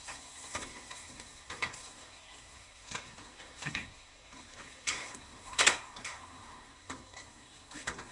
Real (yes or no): no